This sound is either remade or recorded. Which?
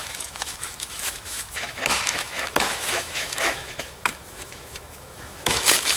remade